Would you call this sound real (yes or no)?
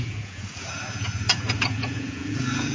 no